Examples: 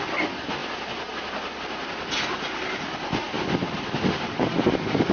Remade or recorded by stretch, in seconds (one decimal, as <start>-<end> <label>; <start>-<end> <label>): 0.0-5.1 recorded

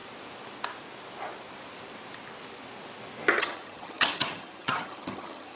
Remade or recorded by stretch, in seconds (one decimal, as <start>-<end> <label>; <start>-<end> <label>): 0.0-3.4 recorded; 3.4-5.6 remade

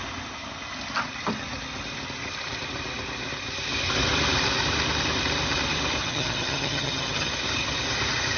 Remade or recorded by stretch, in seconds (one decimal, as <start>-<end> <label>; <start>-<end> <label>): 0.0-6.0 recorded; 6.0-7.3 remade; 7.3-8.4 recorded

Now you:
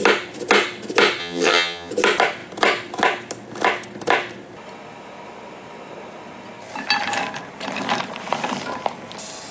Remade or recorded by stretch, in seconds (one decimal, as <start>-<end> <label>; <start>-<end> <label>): 0.0-1.2 recorded; 1.2-1.9 remade; 1.9-9.5 recorded

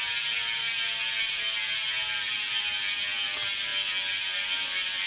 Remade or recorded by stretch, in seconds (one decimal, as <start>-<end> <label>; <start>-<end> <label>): 0.0-5.1 recorded

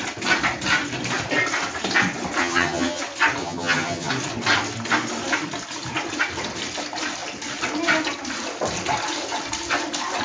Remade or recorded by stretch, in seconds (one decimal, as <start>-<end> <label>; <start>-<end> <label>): 0.0-2.4 recorded; 2.4-3.0 remade; 3.0-3.4 recorded; 3.4-4.1 remade; 4.1-10.2 recorded

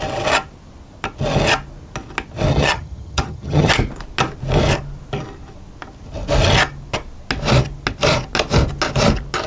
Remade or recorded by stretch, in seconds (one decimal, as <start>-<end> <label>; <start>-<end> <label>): 0.0-2.5 recorded; 2.5-3.7 remade; 3.7-9.5 recorded